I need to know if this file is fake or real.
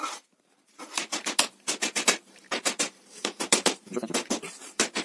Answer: fake